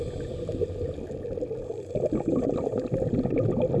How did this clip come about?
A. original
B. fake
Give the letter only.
A